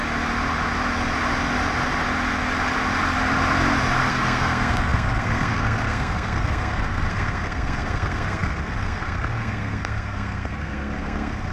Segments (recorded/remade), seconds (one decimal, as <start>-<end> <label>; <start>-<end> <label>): 0.0-4.1 recorded; 4.1-11.5 remade